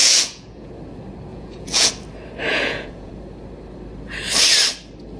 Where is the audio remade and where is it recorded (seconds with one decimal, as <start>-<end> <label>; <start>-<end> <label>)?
0.0-0.7 remade; 0.7-1.3 recorded; 1.3-1.9 remade; 1.9-2.5 recorded; 2.5-3.1 remade; 3.1-5.2 recorded